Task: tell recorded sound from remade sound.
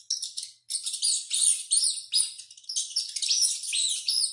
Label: recorded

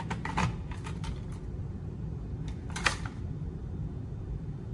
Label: remade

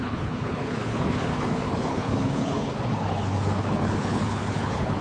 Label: remade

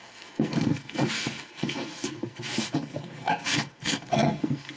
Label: remade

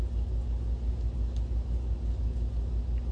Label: recorded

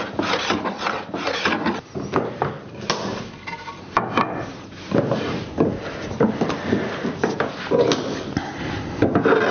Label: recorded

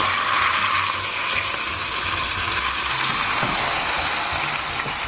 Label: recorded